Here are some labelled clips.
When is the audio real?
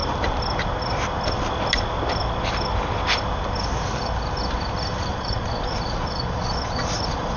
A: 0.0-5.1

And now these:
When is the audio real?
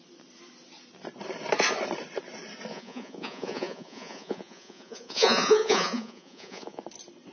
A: 0.0-2.7; 6.8-7.3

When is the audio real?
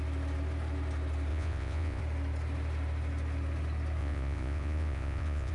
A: 0.0-1.3; 2.0-4.0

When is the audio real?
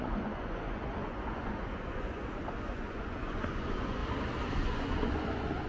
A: 4.0-4.6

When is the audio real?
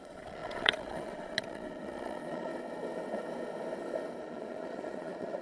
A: 2.5-4.2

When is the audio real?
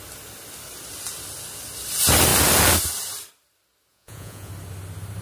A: 0.0-3.9; 4.5-5.2